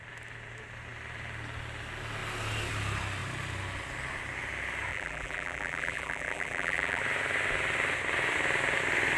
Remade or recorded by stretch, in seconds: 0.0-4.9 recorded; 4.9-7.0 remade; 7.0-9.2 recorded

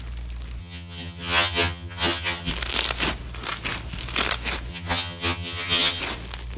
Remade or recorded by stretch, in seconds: 0.0-0.6 recorded; 0.6-2.5 remade; 2.5-4.7 recorded; 4.7-6.0 remade; 6.0-6.6 recorded

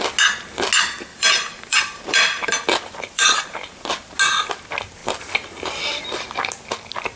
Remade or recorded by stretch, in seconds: 0.0-1.1 recorded; 1.1-3.8 remade; 3.8-7.2 recorded